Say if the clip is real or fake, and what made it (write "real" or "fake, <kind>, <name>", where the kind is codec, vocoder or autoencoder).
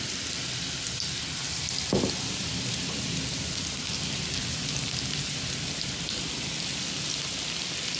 real